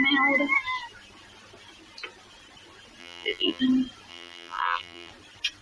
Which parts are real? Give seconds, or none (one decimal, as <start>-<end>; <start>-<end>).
0.0-3.0; 3.6-4.1; 5.1-5.6